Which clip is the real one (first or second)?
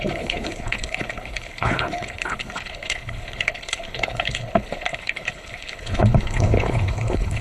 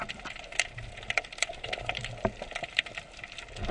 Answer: second